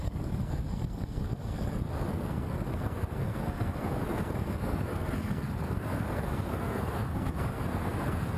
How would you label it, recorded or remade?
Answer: remade